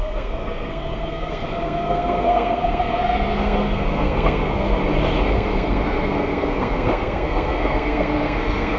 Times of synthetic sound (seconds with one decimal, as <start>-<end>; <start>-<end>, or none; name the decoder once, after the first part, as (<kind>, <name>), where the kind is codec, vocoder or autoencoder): 0.0-4.8 (codec, SNAC); 5.3-8.8